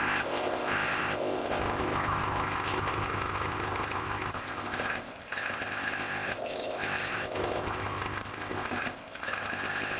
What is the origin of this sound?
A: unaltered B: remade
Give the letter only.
B